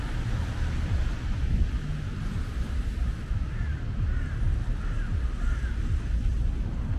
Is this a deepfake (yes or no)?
no